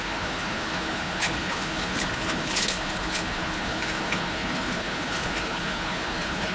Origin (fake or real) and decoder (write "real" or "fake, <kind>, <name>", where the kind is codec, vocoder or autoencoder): fake, codec, HILCodec